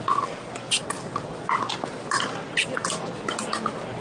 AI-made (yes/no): no